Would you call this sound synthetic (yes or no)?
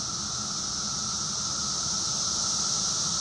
no